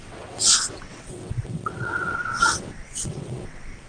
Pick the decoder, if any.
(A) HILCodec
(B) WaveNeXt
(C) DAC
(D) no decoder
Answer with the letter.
B